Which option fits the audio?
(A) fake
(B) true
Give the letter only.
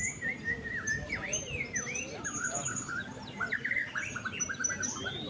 A